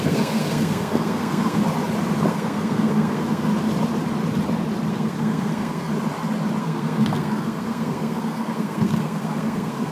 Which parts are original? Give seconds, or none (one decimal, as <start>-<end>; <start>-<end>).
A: 1.6-2.3; 3.5-4.9; 5.9-6.6